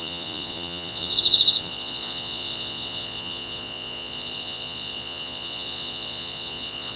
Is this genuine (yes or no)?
no